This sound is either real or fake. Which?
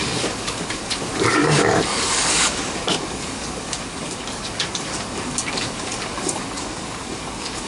fake